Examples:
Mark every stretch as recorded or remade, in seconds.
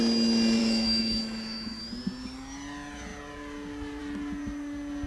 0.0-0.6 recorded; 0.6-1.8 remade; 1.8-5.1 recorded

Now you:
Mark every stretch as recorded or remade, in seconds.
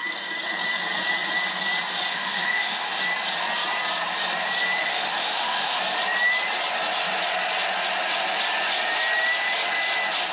0.0-2.1 recorded; 2.1-3.0 remade; 3.0-4.8 recorded; 4.8-5.8 remade; 5.8-10.3 recorded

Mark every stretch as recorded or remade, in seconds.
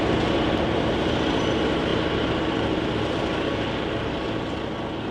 0.0-5.1 recorded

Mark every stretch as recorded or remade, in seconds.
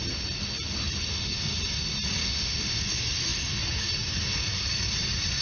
0.0-1.1 recorded; 1.1-1.6 remade; 1.6-2.2 recorded; 2.2-2.8 remade; 2.8-5.4 recorded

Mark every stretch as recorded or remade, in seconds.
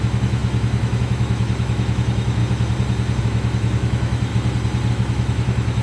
0.0-2.4 remade; 2.4-3.2 recorded; 3.2-4.3 remade; 4.3-4.9 recorded; 4.9-5.8 remade